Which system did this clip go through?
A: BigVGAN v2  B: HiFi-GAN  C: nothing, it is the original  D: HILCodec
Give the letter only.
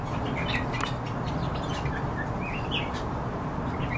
C